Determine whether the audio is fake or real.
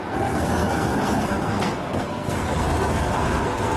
fake